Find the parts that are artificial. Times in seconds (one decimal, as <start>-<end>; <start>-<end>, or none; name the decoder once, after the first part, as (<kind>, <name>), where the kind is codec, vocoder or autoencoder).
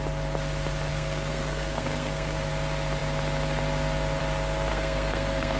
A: 0.9-2.5 (codec, SNAC); 4.7-5.6